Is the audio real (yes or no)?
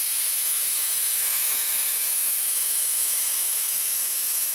no